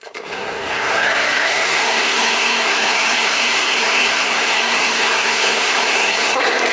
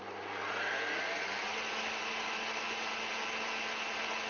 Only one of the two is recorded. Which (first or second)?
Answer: second